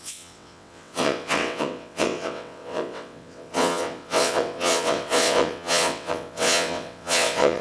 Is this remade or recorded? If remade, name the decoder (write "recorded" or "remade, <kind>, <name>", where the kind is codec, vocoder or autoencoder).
remade, vocoder, WaveNeXt